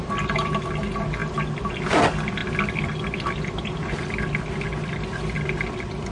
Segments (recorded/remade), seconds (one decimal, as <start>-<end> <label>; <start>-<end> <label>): 0.0-6.1 recorded

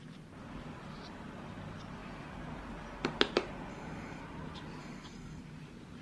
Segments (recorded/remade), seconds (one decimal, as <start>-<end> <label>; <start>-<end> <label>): 0.0-3.7 recorded; 3.7-4.2 remade; 4.2-4.8 recorded; 4.8-5.4 remade; 5.4-6.0 recorded

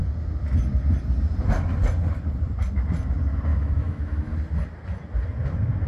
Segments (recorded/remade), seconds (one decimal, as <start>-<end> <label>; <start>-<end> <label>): 0.0-3.5 recorded; 3.5-4.3 remade; 4.3-5.9 recorded

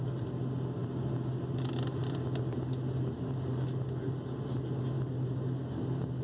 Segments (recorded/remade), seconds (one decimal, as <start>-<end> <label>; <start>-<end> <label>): 0.0-6.2 recorded

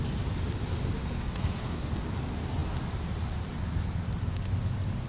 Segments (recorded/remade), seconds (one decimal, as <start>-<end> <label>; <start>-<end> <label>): 0.0-1.0 recorded; 1.0-1.9 remade; 1.9-5.1 recorded

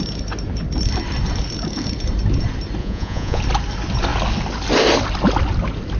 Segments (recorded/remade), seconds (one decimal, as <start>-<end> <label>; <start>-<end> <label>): 0.0-2.8 recorded; 2.8-3.4 remade; 3.4-6.0 recorded

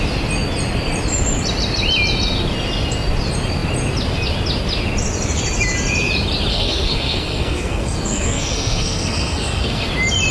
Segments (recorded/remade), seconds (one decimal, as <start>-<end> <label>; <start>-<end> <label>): 0.0-6.5 recorded; 6.5-9.9 remade; 9.9-10.3 recorded